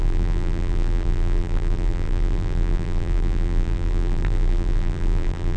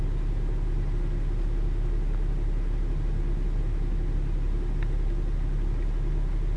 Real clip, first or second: second